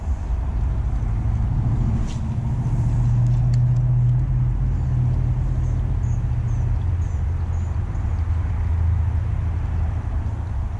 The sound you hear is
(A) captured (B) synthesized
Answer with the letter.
A